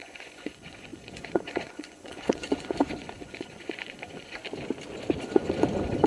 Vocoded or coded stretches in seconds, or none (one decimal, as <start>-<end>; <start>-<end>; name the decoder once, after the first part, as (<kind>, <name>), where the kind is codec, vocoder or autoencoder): 0.0-4.4 (vocoder, Vocos); 5.2-6.1